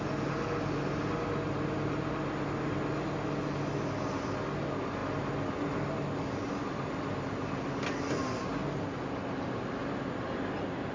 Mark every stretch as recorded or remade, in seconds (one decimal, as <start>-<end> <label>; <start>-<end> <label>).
0.0-10.9 recorded